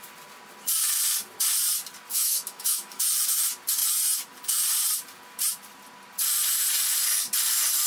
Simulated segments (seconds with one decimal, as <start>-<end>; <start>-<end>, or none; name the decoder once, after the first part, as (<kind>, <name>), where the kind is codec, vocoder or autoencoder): 2.1-3.0 (autoencoder, DAC-VAE)